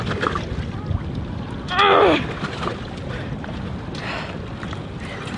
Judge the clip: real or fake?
real